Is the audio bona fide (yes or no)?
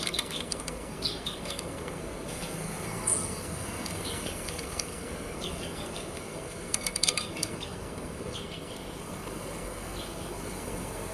no